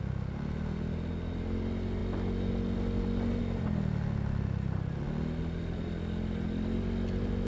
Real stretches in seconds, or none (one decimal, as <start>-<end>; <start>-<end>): 0.0-7.5